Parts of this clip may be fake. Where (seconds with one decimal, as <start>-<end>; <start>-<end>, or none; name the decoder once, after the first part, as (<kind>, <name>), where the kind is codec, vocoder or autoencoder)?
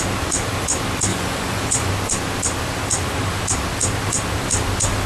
1.1-1.9 (vocoder, Vocos)